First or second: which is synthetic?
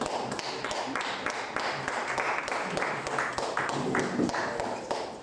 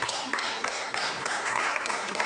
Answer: second